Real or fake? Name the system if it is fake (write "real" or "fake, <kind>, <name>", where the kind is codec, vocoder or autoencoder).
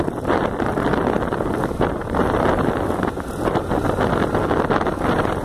real